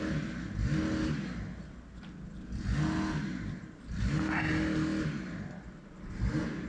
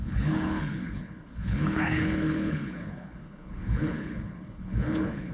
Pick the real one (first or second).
first